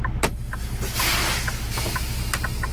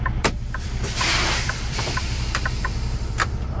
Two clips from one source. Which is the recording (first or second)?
first